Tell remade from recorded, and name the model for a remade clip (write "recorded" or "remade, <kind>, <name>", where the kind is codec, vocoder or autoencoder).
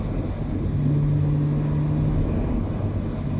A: recorded